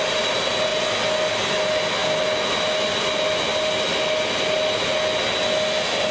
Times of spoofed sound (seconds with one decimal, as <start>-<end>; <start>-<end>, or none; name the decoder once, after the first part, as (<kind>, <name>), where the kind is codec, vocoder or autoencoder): none